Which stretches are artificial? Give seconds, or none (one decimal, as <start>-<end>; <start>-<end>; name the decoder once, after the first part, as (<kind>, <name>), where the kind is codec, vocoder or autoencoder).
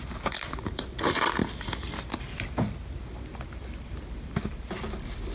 0.0-1.4 (vocoder, BigVGAN v2); 3.5-5.3